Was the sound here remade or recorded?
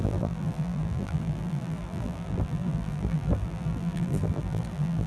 remade